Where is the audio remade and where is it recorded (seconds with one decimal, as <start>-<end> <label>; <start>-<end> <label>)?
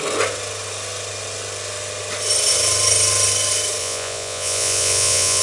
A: 0.0-3.8 recorded; 3.8-5.4 remade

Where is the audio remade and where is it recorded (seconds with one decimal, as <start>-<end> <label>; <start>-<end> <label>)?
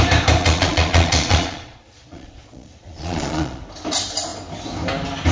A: 0.0-0.4 recorded; 0.4-3.6 remade; 3.6-5.3 recorded